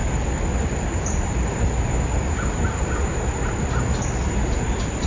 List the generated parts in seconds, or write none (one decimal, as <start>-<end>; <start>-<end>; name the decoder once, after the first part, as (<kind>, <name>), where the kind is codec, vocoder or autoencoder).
2.8-5.1 (vocoder, BigVGAN v2)